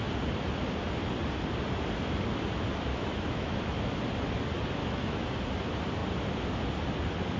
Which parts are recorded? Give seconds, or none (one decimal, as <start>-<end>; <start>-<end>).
0.0-2.9; 3.6-4.8; 5.3-7.4